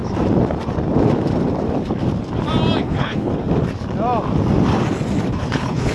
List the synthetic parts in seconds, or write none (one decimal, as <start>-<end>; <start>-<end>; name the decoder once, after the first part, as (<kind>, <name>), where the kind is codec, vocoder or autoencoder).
2.8-3.3 (codec, HILCodec); 5.3-5.9